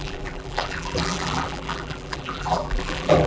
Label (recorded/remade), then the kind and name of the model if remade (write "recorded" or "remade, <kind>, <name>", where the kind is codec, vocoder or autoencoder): remade, vocoder, BigVGAN v2